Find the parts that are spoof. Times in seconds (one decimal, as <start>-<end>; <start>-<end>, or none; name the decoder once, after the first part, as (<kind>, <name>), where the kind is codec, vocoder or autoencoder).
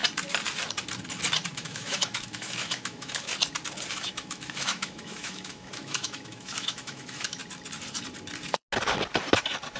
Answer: 1.5-3.3 (autoencoder, DAC-VAE); 3.9-7.4